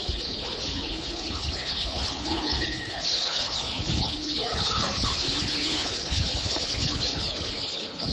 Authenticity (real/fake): fake